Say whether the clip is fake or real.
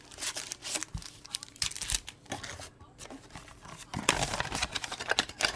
fake